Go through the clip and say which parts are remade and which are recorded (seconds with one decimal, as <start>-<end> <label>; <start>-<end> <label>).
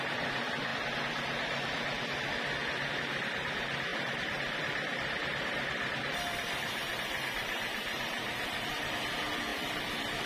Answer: 0.0-3.9 recorded; 3.9-9.0 remade; 9.0-9.5 recorded; 9.5-10.3 remade